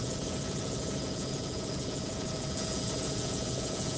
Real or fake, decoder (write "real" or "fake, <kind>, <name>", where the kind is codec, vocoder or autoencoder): fake, vocoder, Vocos